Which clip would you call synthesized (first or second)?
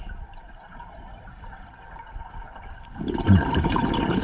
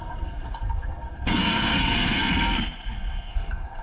second